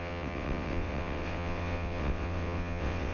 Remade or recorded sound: remade